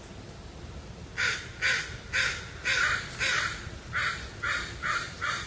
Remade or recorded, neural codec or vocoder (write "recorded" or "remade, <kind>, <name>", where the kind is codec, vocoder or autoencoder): recorded